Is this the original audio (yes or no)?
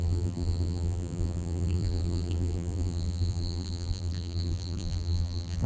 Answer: no